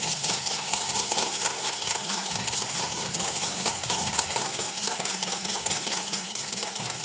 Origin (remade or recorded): remade